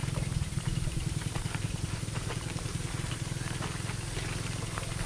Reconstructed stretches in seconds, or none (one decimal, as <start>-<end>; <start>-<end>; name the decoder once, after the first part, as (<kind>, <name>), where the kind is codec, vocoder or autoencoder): 0.0-3.1 (vocoder, BigVGAN v2)